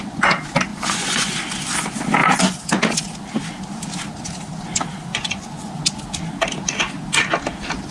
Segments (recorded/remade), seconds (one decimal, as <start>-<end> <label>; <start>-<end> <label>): 0.0-0.7 recorded; 0.7-1.3 remade; 1.3-5.1 recorded; 5.1-5.7 remade; 5.7-7.9 recorded